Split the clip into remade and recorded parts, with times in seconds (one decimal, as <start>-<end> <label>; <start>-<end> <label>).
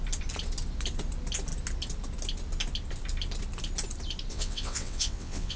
0.0-4.3 recorded; 4.3-5.6 remade